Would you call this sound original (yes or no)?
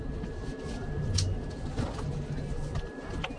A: yes